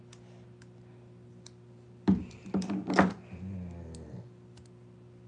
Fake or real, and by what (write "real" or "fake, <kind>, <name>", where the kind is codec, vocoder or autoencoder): real